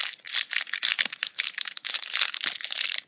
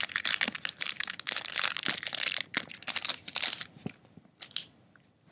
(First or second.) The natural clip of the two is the first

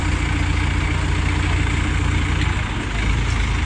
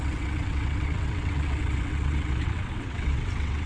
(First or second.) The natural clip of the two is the first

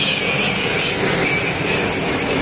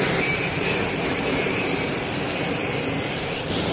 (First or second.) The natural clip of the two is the first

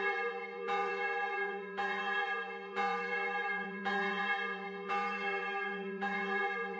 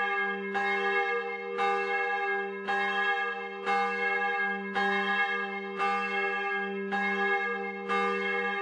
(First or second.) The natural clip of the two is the second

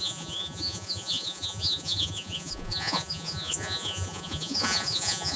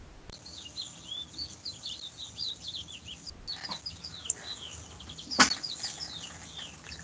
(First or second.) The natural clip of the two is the second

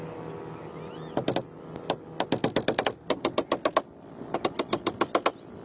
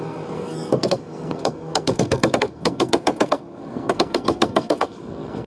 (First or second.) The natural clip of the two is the first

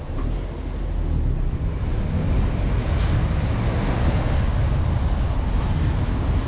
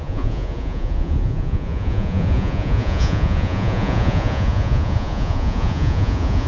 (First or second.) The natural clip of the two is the first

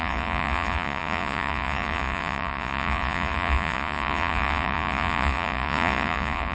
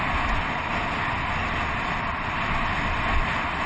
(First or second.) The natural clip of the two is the second